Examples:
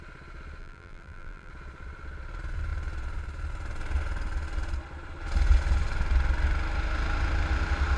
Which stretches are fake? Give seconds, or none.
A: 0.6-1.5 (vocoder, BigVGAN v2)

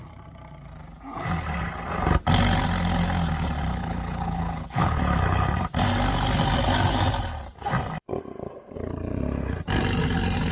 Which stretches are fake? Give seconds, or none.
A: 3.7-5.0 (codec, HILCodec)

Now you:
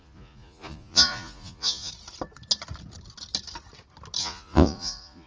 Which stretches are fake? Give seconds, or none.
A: 0.0-1.9 (vocoder, Vocos); 4.2-5.3

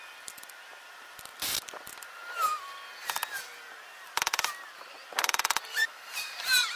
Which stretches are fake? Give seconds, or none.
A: 0.0-1.3 (vocoder, BigVGAN v2); 5.1-6.8

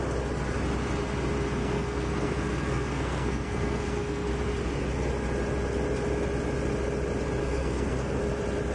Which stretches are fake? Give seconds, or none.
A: 1.6-4.3 (codec, SNAC); 7.4-8.2

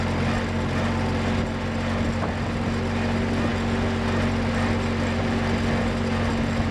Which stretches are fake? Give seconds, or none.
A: none

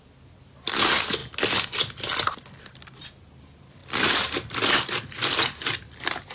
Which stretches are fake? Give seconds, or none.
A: none